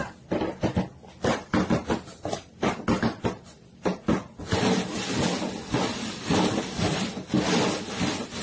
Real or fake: real